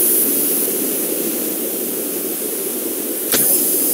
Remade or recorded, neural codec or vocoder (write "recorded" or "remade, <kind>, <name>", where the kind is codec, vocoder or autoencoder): recorded